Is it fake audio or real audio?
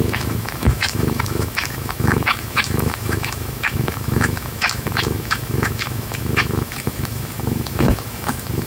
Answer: fake